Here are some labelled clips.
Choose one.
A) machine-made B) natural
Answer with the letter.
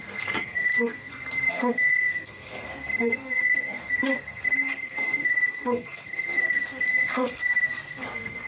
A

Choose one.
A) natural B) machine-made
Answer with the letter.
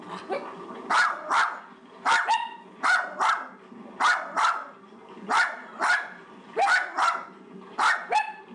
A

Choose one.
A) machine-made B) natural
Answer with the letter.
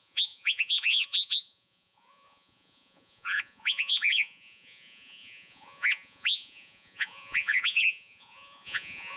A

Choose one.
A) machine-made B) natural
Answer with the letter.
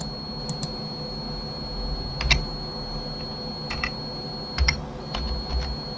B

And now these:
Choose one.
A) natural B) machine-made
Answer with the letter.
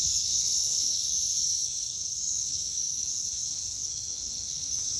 B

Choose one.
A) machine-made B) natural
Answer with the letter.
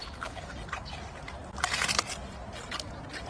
B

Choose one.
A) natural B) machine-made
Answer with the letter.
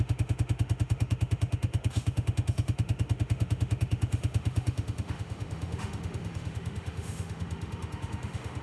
B